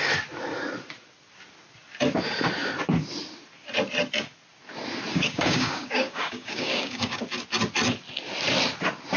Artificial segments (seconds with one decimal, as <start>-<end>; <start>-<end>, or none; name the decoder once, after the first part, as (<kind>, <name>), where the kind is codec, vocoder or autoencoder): 5.1-7.2 (codec, DAC)